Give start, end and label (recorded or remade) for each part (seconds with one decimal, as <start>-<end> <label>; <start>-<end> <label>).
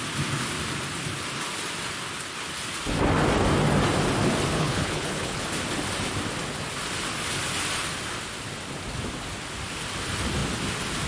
0.0-4.5 recorded; 4.5-5.4 remade; 5.4-11.1 recorded